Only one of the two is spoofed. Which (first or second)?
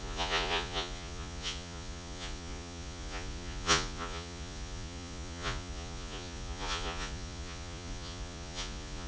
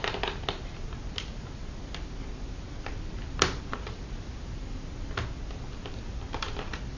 first